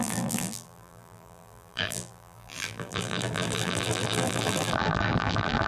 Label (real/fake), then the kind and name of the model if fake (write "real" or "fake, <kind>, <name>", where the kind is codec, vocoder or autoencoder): fake, vocoder, BigVGAN v2